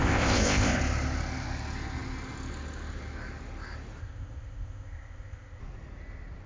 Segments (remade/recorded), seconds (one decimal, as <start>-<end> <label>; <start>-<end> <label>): 0.0-0.8 remade; 0.8-4.0 recorded; 4.0-5.6 remade; 5.6-6.5 recorded